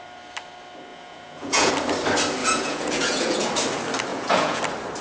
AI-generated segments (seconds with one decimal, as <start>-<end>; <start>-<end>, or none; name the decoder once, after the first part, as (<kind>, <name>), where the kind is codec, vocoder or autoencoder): 0.9-1.7 (vocoder, Vocos); 2.4-3.5; 4.1-4.6